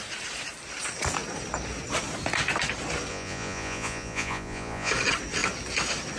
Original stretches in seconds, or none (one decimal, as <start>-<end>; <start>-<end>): 0.0-3.1; 4.9-6.2